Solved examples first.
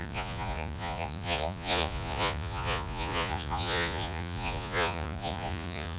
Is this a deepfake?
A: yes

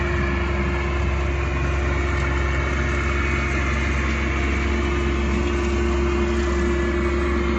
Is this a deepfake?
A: no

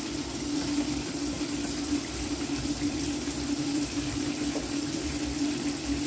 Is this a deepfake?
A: yes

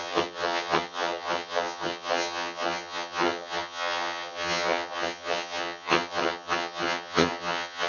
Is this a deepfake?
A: yes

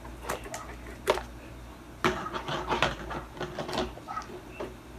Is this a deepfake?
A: no